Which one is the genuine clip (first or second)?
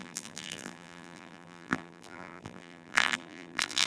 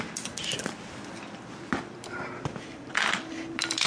second